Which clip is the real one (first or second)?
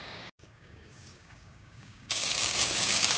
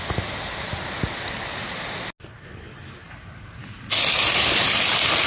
second